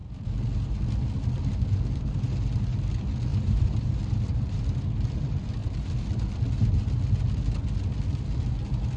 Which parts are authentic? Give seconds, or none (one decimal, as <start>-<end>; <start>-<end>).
0.0-3.3; 4.8-9.0